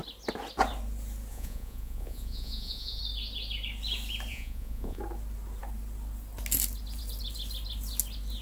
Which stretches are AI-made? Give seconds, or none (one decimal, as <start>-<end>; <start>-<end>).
1.3-3.0; 4.3-5.0